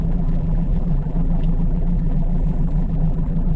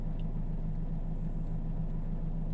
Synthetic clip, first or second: first